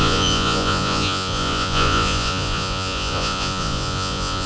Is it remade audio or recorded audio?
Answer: remade